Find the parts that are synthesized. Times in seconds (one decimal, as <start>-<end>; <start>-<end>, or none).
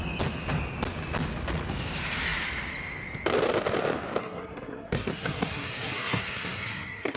4.2-7.2